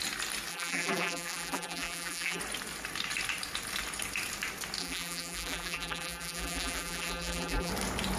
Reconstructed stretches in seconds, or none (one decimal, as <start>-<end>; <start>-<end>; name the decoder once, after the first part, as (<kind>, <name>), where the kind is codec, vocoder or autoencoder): 0.5-2.4 (vocoder, BigVGAN v2); 4.8-7.7